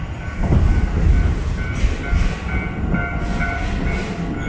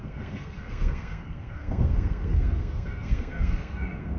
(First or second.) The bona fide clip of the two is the first